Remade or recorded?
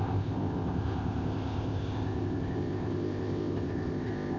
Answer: remade